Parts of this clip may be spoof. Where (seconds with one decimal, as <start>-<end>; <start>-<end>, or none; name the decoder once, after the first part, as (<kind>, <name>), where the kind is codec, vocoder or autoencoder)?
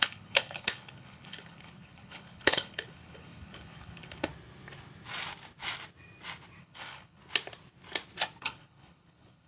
0.0-4.3 (codec, HILCodec); 6.6-7.2; 8.4-9.5